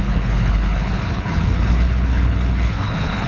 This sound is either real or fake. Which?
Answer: fake